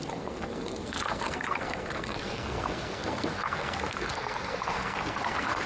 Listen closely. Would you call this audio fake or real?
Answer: fake